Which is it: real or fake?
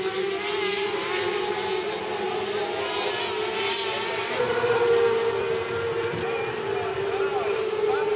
real